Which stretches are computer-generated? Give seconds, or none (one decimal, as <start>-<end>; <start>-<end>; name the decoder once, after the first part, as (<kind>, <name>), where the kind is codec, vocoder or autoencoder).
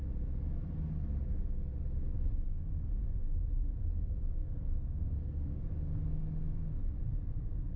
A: 4.4-5.6 (codec, SNAC)